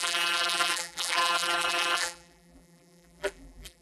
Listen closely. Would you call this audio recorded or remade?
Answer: remade